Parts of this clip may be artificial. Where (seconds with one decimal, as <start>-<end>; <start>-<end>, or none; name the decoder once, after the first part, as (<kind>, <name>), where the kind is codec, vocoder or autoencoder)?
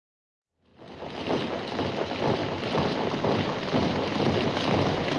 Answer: 0.0-0.7 (vocoder, BigVGAN v2); 1.8-5.2